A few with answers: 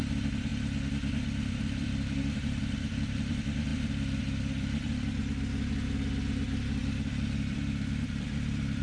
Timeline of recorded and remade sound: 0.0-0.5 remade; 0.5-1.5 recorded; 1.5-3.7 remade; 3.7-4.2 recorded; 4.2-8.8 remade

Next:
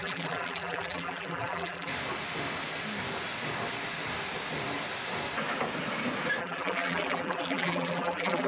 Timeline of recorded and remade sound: 0.0-1.9 remade; 1.9-6.4 recorded; 6.4-8.5 remade

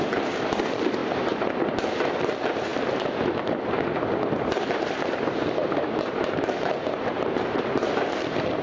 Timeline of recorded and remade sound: 0.0-1.0 recorded; 1.0-1.5 remade; 1.5-5.6 recorded; 5.6-7.9 remade; 7.9-8.6 recorded

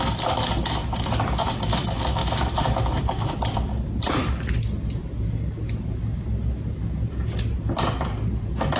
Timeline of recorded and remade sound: 0.0-8.8 recorded